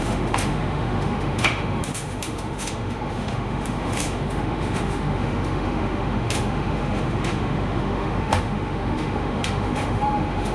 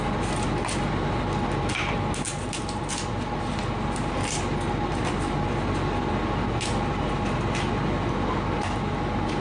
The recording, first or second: second